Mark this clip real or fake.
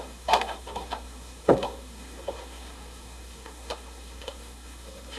fake